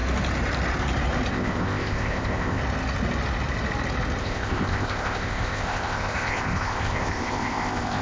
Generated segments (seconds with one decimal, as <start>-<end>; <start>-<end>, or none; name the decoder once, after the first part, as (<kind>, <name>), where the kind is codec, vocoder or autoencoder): 1.3-2.6 (codec, ZipCodec); 4.2-8.0